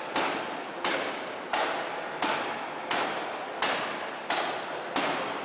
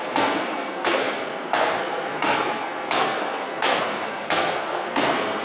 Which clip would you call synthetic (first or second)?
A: second